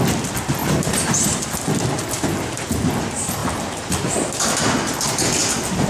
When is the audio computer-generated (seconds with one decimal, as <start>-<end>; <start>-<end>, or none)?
0.6-1.7